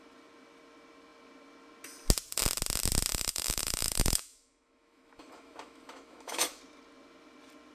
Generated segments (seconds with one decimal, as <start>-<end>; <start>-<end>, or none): 3.1-6.6